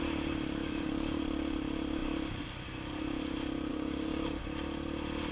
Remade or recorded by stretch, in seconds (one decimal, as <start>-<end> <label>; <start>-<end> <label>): 0.0-0.6 recorded; 0.6-1.2 remade; 1.2-3.7 recorded; 3.7-4.4 remade; 4.4-5.3 recorded